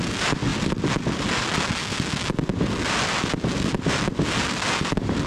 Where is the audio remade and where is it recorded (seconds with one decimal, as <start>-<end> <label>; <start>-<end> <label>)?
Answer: 0.0-5.3 recorded

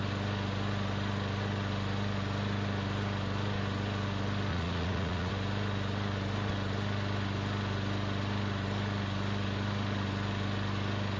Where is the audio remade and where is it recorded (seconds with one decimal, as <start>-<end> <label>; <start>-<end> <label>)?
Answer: 0.0-4.5 recorded; 4.5-5.3 remade; 5.3-11.2 recorded

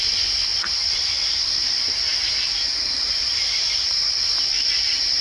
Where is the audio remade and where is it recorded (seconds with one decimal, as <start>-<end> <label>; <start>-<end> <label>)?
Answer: 0.0-5.2 recorded

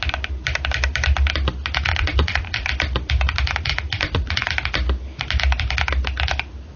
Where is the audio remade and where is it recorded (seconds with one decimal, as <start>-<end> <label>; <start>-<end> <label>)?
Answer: 0.0-1.9 recorded; 1.9-2.7 remade; 2.7-3.7 recorded; 3.7-4.5 remade; 4.5-6.8 recorded